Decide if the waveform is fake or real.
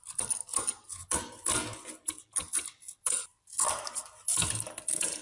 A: real